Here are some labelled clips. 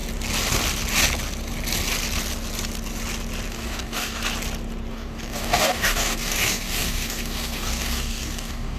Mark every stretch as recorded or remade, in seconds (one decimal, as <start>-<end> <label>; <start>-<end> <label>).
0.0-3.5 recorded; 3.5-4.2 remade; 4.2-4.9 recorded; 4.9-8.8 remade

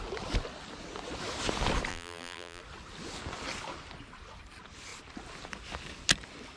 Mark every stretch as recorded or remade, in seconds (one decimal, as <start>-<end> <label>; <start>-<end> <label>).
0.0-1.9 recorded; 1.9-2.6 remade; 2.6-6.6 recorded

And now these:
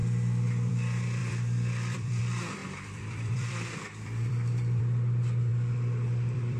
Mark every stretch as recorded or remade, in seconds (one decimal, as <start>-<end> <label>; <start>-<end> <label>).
0.0-1.2 recorded; 1.2-2.2 remade; 2.2-2.6 recorded; 2.6-4.8 remade; 4.8-5.5 recorded; 5.5-6.6 remade

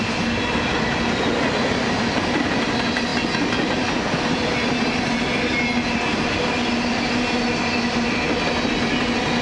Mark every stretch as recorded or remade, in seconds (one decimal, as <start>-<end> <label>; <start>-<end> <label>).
0.0-9.4 recorded

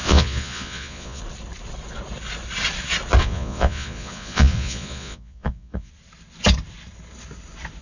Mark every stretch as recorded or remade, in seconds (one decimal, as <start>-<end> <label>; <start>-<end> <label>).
0.0-1.2 remade; 1.2-3.2 recorded; 3.2-5.9 remade; 5.9-7.8 recorded